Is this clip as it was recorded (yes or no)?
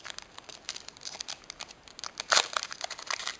yes